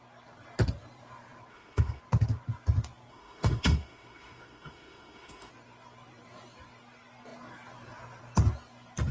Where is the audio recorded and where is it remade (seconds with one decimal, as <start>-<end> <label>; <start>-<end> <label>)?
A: 0.0-1.5 recorded; 1.5-2.0 remade; 2.0-3.1 recorded; 3.1-5.5 remade; 5.5-9.1 recorded